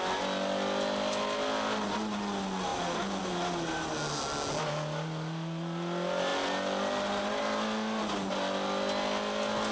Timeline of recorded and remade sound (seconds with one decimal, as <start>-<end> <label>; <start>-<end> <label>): 0.0-9.7 recorded